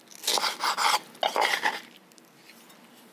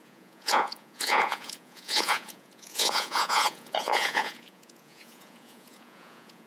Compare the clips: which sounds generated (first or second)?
second